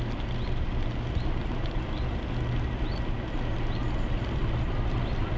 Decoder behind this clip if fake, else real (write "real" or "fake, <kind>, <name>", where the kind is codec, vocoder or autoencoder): real